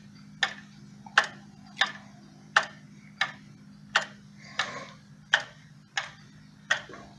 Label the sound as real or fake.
real